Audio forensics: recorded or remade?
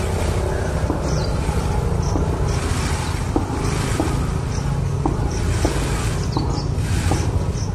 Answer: recorded